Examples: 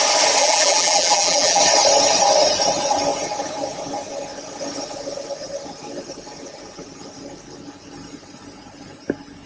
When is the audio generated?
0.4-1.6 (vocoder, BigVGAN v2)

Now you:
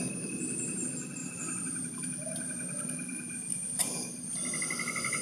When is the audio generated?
1.2-4.3 (vocoder, BigVGAN v2)

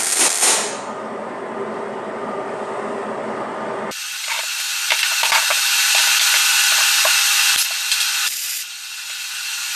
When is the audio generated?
none

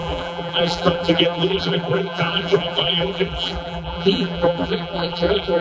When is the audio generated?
0.0-5.6 (vocoder, BigVGAN v2)